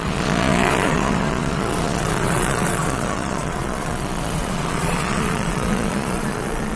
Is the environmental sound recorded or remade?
remade